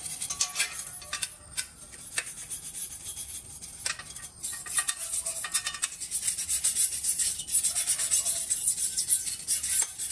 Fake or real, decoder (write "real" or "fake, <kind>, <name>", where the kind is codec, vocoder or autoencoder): real